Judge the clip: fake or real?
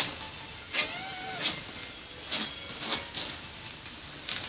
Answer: real